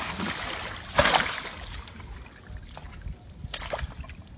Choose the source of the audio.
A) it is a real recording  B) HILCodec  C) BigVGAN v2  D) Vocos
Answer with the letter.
A